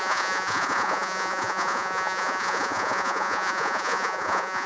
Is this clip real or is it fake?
fake